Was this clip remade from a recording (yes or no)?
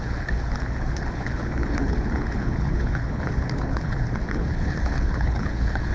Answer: yes